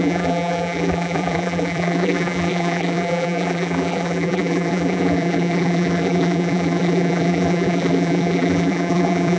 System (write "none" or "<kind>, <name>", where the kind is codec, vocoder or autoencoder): vocoder, BigVGAN v2